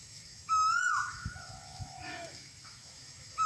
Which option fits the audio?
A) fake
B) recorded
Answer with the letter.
A